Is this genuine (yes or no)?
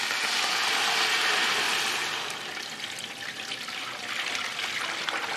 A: yes